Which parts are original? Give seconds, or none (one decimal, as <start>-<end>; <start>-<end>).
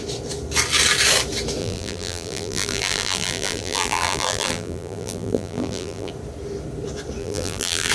0.0-1.6; 6.1-7.2